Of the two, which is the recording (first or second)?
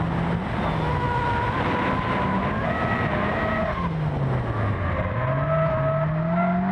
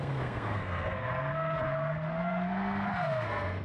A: first